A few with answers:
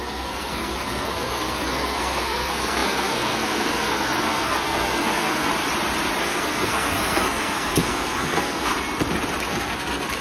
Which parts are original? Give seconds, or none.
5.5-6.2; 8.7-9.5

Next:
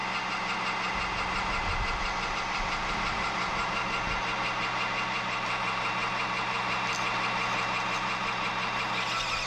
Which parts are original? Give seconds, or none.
0.0-9.5

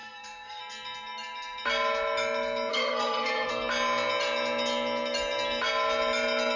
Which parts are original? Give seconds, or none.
0.6-2.7; 3.5-6.6

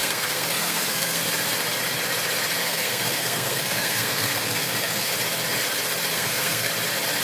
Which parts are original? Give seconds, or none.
1.2-2.6; 5.1-6.1; 6.7-7.2

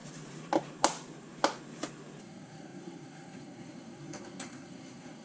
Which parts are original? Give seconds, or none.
0.0-2.2

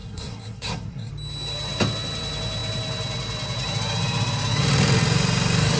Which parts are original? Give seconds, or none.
1.1-5.8